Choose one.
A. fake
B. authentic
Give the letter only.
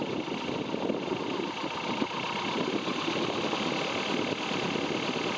B